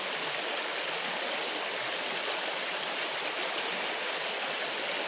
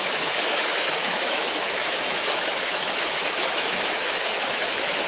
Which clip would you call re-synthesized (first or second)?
second